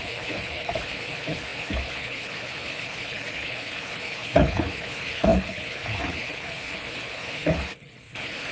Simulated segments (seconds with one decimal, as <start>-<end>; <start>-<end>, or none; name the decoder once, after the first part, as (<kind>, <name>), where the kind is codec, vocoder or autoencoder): 0.0-8.5 (codec, HILCodec)